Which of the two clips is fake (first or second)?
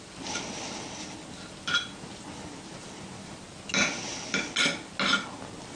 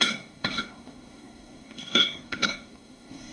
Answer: second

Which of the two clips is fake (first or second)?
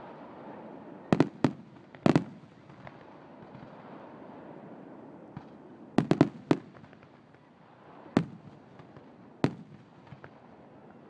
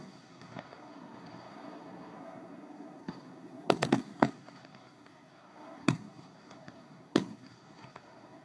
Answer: second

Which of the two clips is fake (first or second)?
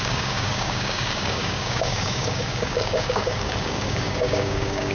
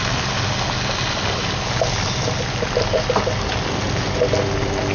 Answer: first